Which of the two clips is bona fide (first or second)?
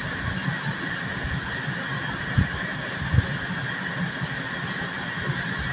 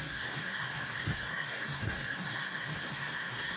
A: first